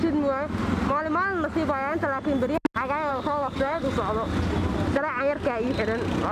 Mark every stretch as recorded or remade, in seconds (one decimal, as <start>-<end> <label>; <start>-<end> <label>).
0.0-3.1 recorded; 3.1-3.9 remade; 3.9-6.3 recorded

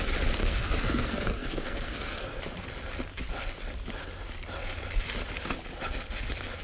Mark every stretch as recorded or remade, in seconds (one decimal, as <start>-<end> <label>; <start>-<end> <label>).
0.0-0.4 recorded; 0.4-2.4 remade; 2.4-6.6 recorded

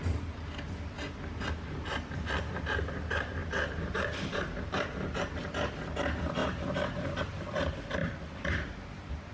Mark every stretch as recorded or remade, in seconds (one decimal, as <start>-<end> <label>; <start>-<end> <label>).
0.0-3.4 recorded; 3.4-5.7 remade; 5.7-6.4 recorded; 6.4-7.2 remade; 7.2-9.3 recorded

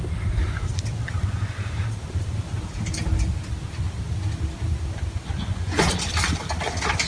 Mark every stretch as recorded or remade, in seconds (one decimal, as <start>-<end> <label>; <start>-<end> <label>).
0.0-5.5 recorded; 5.5-6.1 remade; 6.1-7.1 recorded

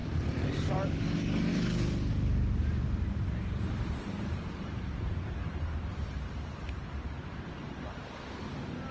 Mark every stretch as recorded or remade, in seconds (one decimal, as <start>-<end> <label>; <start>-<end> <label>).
0.0-0.7 remade; 0.7-2.6 recorded; 2.6-6.2 remade; 6.2-8.9 recorded

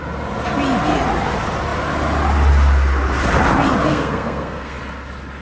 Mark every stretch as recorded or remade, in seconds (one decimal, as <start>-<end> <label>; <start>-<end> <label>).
0.0-3.9 recorded; 3.9-4.8 remade; 4.8-5.4 recorded

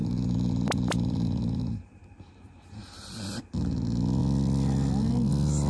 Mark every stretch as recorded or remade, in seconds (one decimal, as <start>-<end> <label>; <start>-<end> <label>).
0.0-3.4 remade; 3.4-5.7 recorded

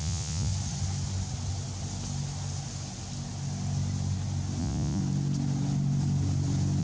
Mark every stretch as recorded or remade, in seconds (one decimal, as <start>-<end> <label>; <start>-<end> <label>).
0.0-0.5 remade; 0.5-4.6 recorded; 4.6-5.0 remade; 5.0-6.8 recorded